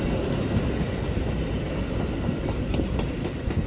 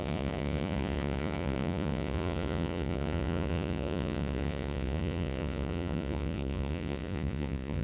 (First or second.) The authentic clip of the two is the first